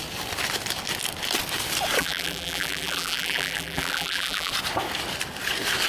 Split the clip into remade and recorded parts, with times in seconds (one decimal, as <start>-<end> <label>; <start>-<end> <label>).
0.0-2.0 recorded; 2.0-4.5 remade; 4.5-5.9 recorded